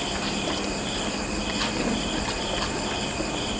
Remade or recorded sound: recorded